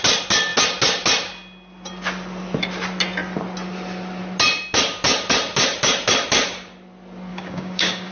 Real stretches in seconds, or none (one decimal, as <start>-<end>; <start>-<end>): 0.0-7.3